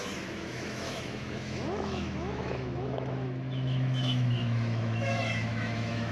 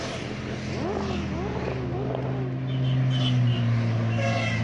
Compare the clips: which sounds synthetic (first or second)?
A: first